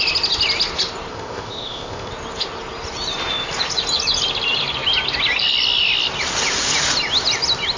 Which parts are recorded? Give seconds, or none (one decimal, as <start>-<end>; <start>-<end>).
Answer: 0.0-1.1; 2.1-7.8